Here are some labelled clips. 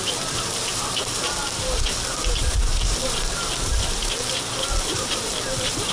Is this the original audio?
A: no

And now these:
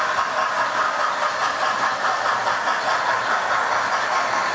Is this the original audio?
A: yes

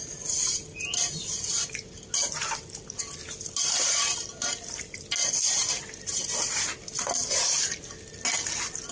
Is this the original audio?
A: yes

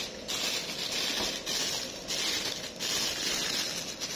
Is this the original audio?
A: yes